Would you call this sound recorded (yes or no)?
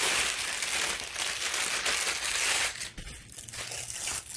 yes